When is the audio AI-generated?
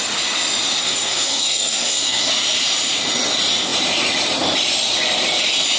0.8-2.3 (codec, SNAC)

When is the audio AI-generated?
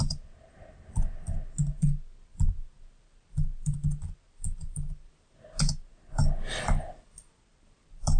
none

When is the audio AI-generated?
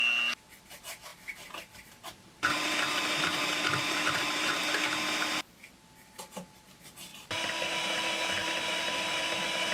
1.1-2.7 (vocoder, BigVGAN v2); 3.8-4.6; 7.1-8.0; 8.4-9.7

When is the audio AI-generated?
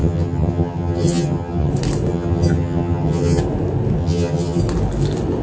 0.0-1.7 (vocoder, HiFi-GAN); 2.1-3.4; 4.0-4.6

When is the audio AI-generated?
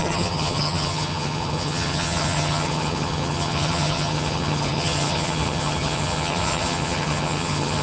0.0-7.8 (vocoder, HiFi-GAN)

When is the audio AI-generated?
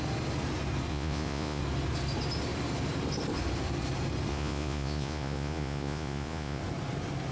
0.9-1.6 (vocoder, Vocos); 4.3-6.6